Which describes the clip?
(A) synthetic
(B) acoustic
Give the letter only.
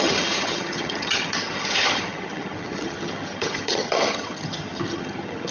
A